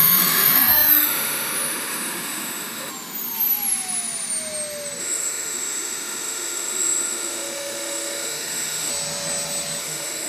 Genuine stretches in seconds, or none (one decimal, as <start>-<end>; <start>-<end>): 2.9-5.0; 8.9-9.8